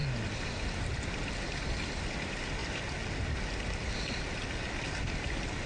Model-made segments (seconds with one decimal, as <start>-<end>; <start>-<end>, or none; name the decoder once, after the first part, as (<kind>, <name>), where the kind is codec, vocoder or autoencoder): none